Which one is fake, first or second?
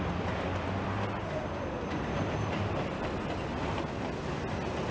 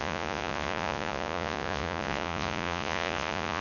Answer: second